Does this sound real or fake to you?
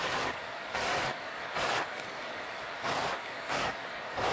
fake